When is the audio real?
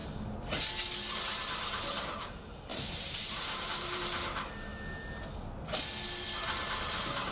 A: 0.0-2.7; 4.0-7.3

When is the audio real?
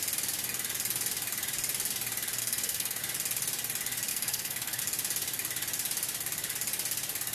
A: 0.0-2.4; 3.0-4.1; 4.8-7.3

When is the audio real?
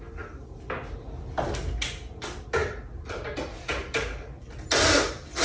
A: 0.0-5.4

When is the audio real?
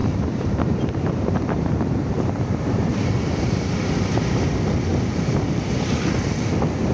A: 3.7-4.9; 5.6-6.9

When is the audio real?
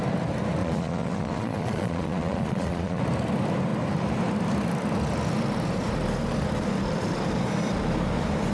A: 0.0-0.6; 3.0-8.5